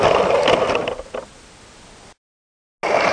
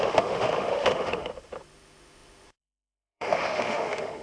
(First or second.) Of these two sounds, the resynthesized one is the second